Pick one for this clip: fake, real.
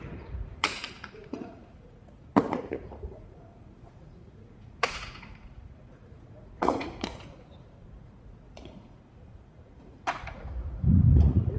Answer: fake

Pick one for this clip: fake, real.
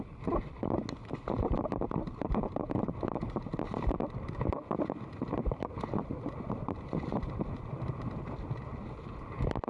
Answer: real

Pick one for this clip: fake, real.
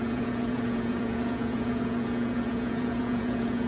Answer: fake